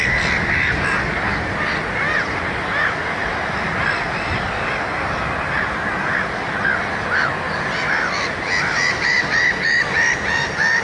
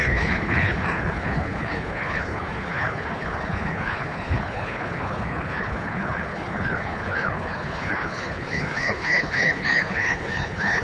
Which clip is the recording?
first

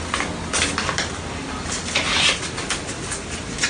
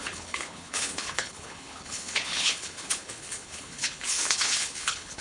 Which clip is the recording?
first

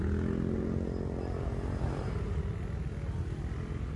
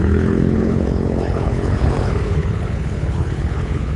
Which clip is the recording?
first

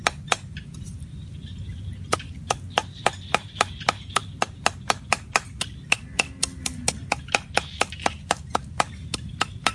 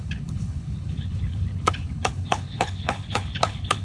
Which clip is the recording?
first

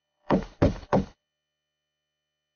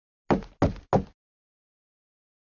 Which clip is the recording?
second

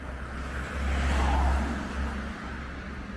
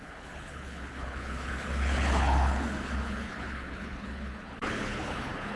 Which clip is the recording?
first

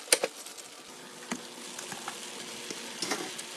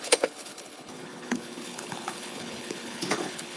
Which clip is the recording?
first